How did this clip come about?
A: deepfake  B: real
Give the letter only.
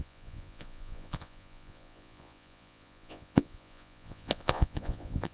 A